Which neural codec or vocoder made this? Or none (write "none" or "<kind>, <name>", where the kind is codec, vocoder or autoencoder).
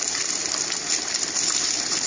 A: none